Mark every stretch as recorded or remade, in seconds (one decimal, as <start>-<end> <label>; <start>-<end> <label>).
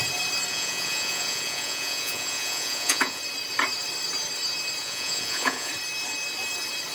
0.0-0.5 recorded; 0.5-3.2 remade; 3.2-4.8 recorded; 4.8-5.7 remade; 5.7-6.9 recorded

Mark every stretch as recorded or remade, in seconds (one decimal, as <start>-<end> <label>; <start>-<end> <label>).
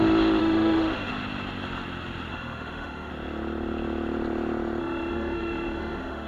0.0-0.4 recorded; 0.4-1.1 remade; 1.1-2.3 recorded; 2.3-3.1 remade; 3.1-4.8 recorded; 4.8-6.3 remade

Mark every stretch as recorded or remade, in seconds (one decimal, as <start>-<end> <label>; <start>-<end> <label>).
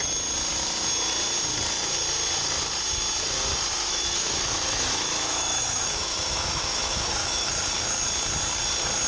0.0-3.8 recorded; 3.8-7.5 remade; 7.5-9.1 recorded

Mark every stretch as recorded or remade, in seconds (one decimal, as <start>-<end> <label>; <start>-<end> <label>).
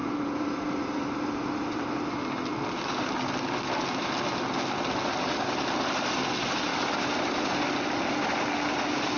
0.0-1.9 remade; 1.9-6.7 recorded; 6.7-7.5 remade; 7.5-9.2 recorded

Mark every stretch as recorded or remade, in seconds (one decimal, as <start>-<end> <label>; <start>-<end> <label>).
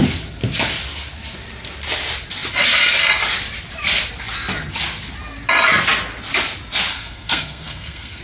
0.0-6.9 recorded; 6.9-8.2 remade